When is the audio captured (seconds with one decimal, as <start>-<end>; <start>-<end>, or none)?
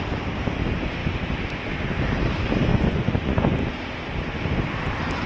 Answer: 0.0-2.7; 3.5-5.3